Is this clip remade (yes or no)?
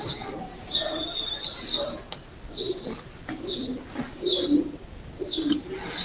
no